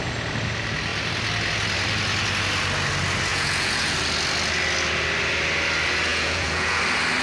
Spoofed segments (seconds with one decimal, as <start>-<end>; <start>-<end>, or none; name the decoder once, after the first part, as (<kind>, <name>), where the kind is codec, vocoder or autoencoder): 3.3-3.9 (vocoder, Vocos); 6.1-6.8